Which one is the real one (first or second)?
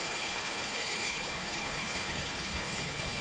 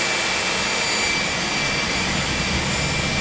second